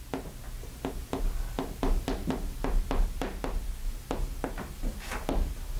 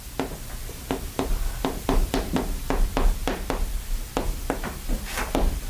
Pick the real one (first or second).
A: first